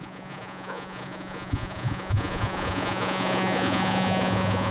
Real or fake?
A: fake